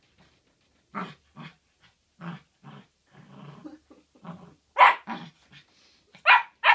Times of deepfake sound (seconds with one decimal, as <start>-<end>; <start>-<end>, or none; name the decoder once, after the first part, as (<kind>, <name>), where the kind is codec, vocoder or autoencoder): none